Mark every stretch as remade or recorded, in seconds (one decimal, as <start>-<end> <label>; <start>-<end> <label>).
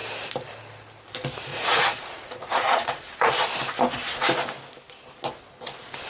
0.0-1.5 recorded; 1.5-3.3 remade; 3.3-6.1 recorded